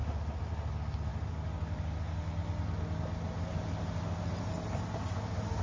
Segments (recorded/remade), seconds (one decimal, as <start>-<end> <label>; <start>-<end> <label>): 0.0-5.6 recorded